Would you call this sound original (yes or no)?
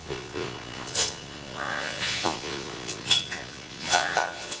no